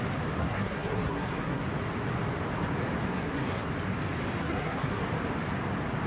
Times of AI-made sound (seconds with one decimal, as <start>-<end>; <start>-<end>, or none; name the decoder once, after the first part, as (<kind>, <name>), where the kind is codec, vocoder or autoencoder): 0.4-1.6 (codec, SNAC); 3.1-3.7; 4.4-5.0